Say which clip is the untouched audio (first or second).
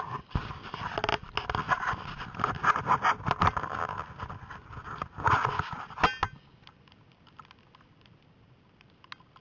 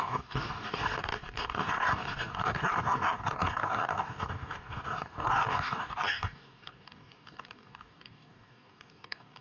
first